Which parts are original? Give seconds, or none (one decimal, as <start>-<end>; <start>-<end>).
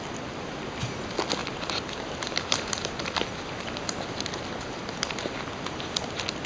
0.0-6.5